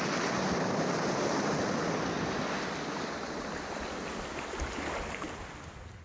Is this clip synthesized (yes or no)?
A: no